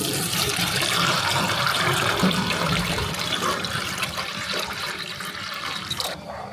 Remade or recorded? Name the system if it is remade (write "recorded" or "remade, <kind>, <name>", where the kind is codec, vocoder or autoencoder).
remade, vocoder, BigVGAN v2